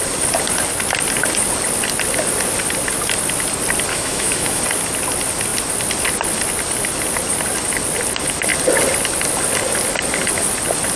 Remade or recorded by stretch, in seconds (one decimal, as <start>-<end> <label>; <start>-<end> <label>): 0.0-3.9 recorded; 3.9-4.6 remade; 4.6-11.0 recorded